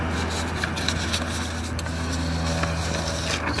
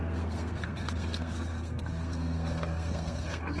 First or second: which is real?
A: first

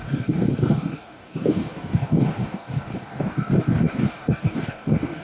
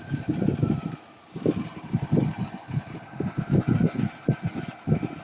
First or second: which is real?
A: second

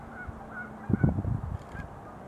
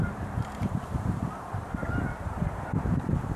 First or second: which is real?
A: first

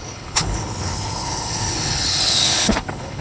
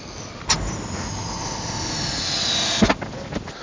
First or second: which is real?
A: second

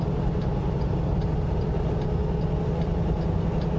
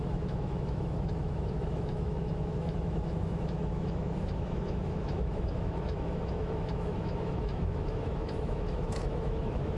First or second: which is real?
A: first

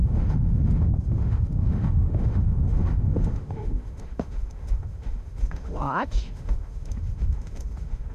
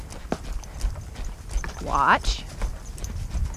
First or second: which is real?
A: second